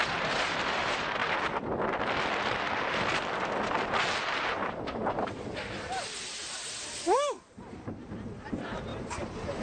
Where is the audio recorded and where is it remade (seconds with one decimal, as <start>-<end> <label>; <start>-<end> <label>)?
0.0-1.2 remade; 1.2-4.5 recorded; 4.5-9.6 remade